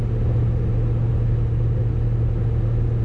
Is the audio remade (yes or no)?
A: no